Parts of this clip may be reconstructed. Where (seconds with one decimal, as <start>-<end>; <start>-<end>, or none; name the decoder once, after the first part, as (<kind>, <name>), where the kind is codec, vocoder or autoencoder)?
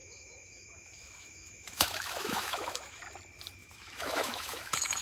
0.0-3.0 (autoencoder, DAC-VAE); 3.6-5.0